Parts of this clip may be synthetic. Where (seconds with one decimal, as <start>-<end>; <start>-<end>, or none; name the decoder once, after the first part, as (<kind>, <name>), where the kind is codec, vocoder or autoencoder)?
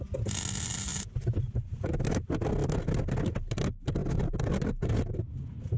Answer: none